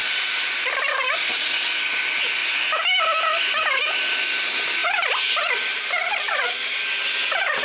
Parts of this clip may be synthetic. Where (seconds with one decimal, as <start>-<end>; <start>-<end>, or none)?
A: 0.0-1.0